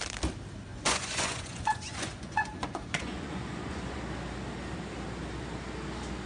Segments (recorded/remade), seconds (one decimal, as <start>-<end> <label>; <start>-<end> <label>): 0.0-0.7 recorded; 0.7-4.0 remade; 4.0-6.3 recorded